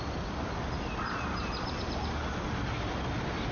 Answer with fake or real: real